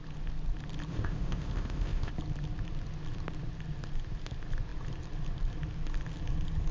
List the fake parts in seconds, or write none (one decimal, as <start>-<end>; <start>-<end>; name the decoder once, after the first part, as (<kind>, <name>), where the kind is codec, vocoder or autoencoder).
0.9-2.1 (codec, ZipCodec)